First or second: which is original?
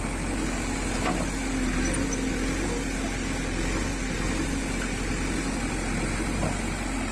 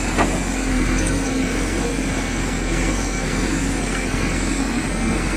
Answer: first